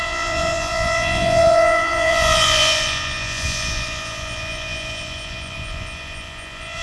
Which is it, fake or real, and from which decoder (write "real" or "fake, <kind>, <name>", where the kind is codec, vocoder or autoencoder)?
fake, vocoder, Vocos